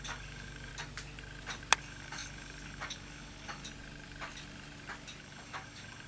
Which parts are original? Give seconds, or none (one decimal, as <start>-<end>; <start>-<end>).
0.7-1.8; 3.6-5.2